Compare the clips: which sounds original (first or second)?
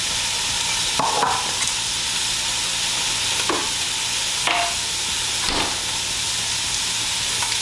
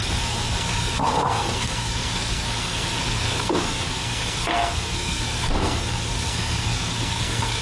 first